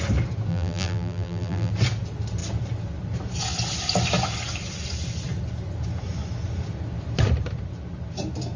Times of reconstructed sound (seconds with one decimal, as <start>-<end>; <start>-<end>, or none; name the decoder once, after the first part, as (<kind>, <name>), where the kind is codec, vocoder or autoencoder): 0.5-1.7 (vocoder, BigVGAN v2)